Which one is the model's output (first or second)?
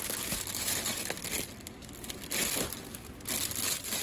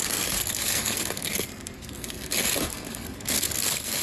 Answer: second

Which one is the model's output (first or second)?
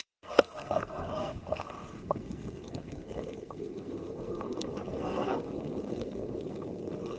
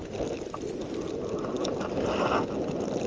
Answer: first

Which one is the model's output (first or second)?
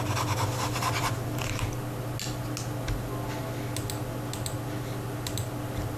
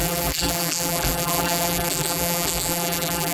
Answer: second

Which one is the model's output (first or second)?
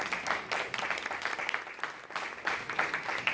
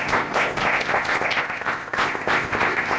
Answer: second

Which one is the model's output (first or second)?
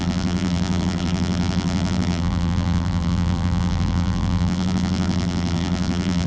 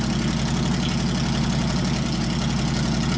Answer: first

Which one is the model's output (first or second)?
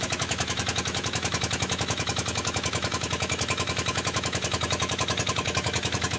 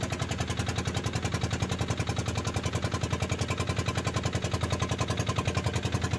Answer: first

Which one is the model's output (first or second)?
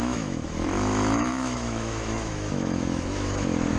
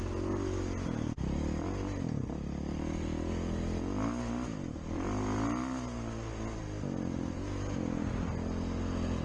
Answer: first